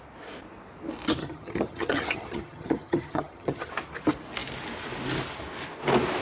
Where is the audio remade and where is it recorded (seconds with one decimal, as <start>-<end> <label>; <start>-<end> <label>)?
0.0-1.2 recorded; 1.2-3.7 remade; 3.7-6.2 recorded